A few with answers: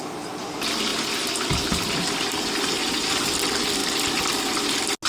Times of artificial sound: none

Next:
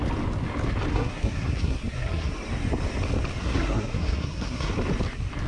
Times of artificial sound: 0.9-2.3 (codec, SNAC); 3.4-4.7

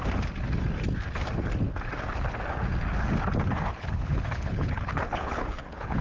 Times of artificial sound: 3.7-6.0 (codec, HILCodec)

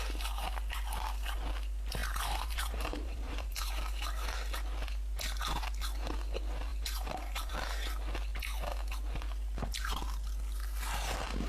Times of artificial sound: 2.0-3.7 (vocoder, BigVGAN v2); 6.7-7.5